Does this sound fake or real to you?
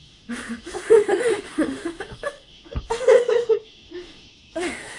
fake